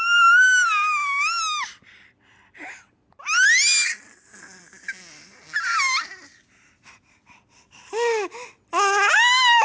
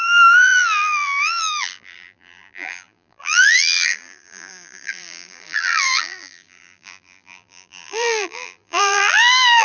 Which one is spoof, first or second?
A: second